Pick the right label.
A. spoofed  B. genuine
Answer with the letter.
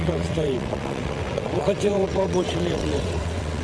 A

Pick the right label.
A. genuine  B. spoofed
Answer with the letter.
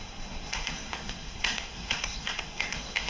B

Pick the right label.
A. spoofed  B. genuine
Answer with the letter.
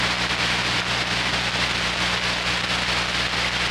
B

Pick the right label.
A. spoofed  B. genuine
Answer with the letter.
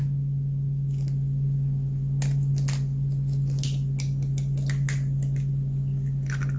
B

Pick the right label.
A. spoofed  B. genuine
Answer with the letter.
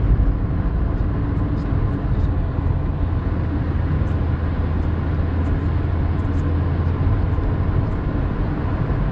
B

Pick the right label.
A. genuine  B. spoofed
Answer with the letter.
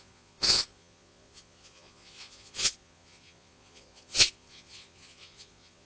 B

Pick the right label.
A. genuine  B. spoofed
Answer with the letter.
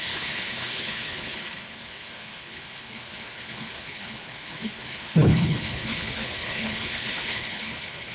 B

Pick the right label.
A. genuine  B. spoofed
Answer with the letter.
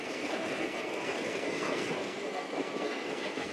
B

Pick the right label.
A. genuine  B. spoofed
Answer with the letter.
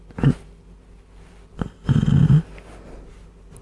A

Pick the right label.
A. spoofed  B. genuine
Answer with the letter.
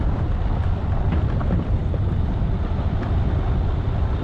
A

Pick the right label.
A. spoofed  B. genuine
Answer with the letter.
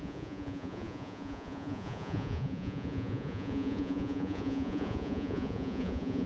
A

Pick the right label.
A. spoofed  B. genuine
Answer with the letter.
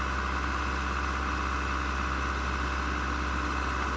B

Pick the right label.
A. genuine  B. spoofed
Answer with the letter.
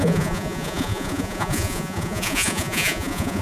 B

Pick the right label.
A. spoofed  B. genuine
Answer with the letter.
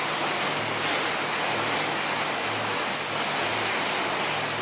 B